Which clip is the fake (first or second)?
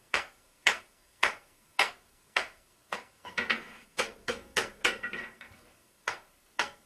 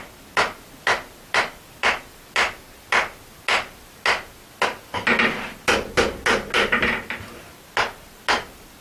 first